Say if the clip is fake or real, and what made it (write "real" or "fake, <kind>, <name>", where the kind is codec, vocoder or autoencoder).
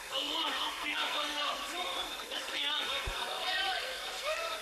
fake, codec, SNAC